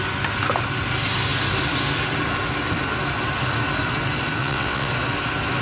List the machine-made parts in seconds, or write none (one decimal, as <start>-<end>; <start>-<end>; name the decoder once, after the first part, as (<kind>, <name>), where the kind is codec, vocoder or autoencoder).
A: 4.4-4.9 (vocoder, WaveNeXt)